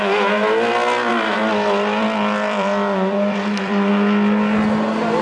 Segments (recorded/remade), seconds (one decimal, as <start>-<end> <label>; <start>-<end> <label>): 0.0-1.1 recorded; 1.1-3.9 remade; 3.9-5.2 recorded